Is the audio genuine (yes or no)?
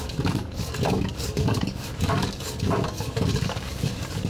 no